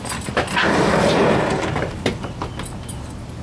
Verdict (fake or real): real